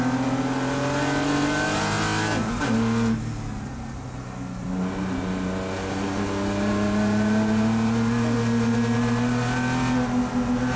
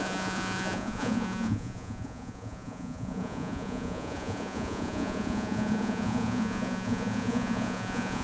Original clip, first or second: first